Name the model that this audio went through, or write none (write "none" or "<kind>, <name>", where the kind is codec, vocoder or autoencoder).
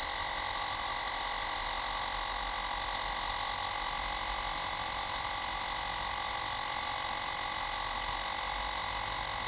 none